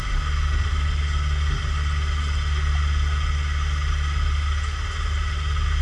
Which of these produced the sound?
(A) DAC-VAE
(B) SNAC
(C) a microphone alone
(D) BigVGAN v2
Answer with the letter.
C